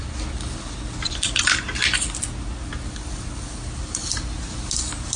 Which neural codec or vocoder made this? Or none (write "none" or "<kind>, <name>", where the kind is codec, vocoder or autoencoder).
none